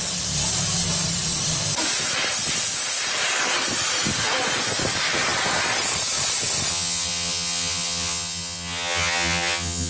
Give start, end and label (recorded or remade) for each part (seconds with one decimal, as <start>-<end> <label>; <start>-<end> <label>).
0.0-6.7 recorded; 6.7-9.9 remade